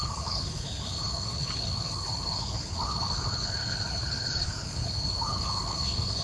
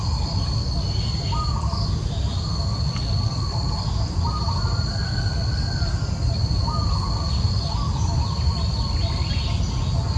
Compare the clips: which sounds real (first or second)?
second